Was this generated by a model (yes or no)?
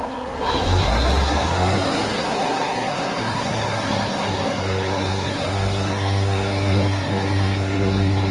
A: yes